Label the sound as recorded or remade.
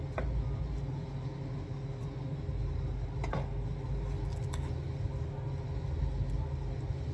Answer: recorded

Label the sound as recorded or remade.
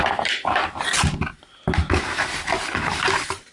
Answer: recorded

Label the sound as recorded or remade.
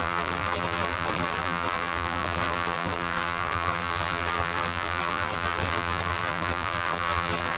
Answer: remade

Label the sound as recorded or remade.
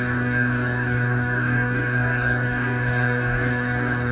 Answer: remade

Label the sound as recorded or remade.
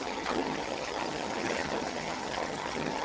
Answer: remade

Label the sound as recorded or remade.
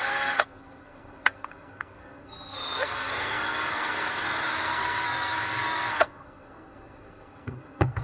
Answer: remade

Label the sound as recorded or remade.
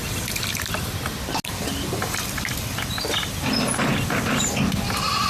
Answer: recorded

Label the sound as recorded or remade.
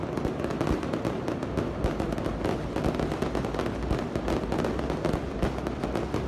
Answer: recorded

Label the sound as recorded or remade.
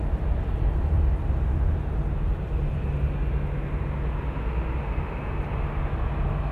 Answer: recorded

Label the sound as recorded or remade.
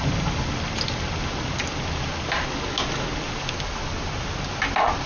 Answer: recorded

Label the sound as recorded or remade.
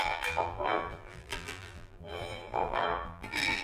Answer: remade